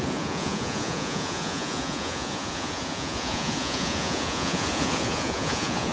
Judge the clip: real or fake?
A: fake